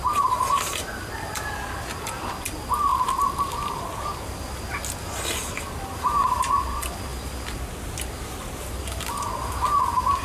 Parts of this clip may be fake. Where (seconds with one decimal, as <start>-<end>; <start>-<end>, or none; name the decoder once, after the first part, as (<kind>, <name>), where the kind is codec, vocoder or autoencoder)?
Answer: none